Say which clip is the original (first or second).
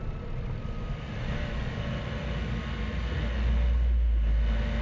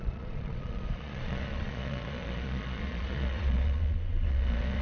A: first